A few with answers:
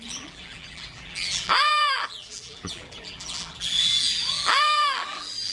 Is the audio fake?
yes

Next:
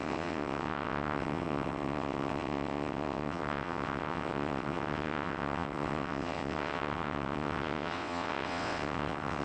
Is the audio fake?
yes